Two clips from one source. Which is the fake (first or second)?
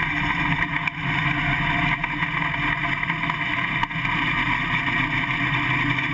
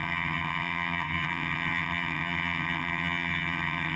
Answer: second